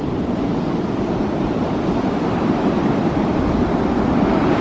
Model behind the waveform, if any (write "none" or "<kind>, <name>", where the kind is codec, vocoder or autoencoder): vocoder, BigVGAN v2